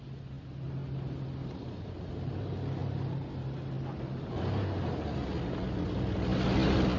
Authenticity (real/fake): real